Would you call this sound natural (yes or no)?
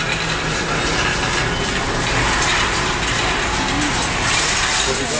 yes